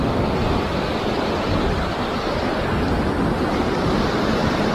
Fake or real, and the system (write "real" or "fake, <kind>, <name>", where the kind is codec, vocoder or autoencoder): real